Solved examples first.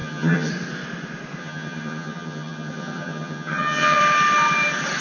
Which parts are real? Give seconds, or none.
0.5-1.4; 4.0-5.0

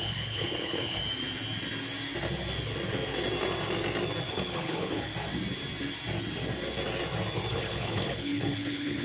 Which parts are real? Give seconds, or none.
1.0-4.3; 5.1-7.5